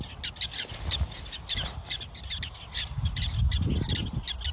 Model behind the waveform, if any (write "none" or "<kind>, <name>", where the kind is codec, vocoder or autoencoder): none